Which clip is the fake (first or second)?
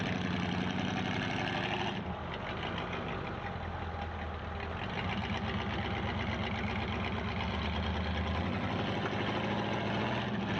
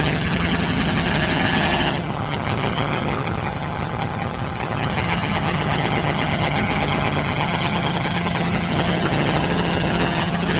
second